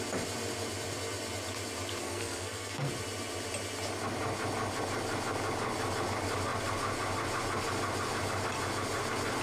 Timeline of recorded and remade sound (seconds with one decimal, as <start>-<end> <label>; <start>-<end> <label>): 0.0-2.0 recorded; 2.0-2.9 remade; 2.9-9.4 recorded